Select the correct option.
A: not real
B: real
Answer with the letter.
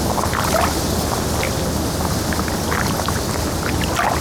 B